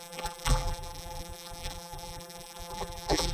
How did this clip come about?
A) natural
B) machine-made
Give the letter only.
B